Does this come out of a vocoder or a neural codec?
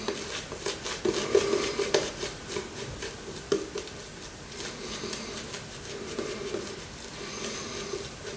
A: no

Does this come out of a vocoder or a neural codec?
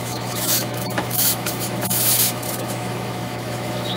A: yes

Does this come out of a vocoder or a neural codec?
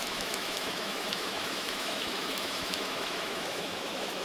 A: yes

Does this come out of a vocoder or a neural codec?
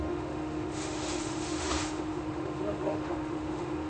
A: yes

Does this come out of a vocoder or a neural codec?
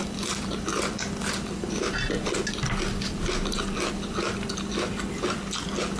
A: no